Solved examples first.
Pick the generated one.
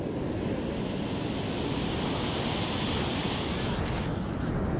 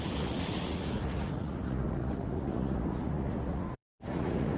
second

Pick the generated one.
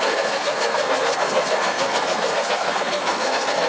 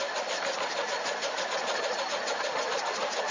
first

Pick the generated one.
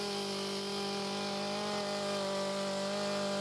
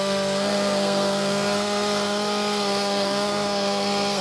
second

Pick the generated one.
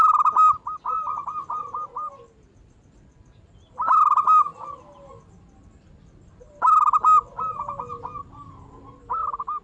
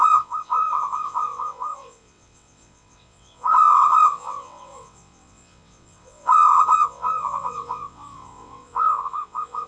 second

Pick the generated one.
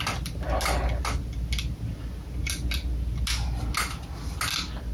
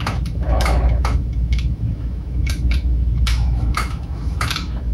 second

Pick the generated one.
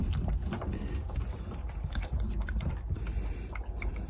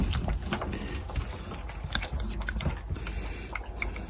first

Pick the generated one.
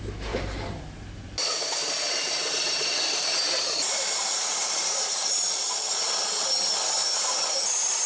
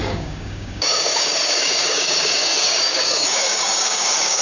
second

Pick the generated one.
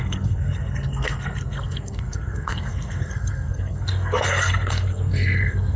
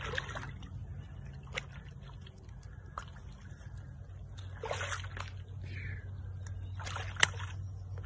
first